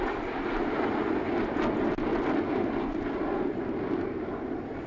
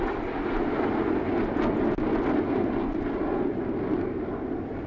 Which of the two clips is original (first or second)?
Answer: second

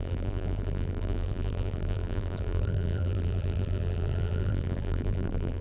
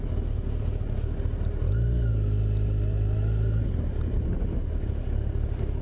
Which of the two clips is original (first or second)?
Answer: second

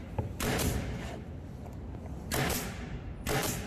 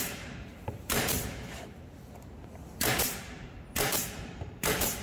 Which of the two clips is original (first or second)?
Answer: first